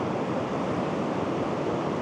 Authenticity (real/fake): fake